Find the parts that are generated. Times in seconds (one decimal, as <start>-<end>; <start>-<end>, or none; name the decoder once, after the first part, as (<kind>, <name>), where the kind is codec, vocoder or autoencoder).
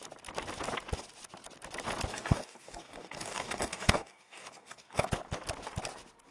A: 2.1-5.1 (codec, DAC)